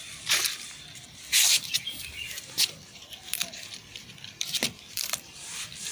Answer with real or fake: fake